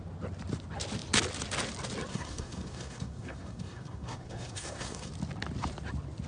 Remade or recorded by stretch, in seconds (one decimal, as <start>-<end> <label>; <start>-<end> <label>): 0.0-2.1 recorded; 2.1-5.1 remade; 5.1-6.3 recorded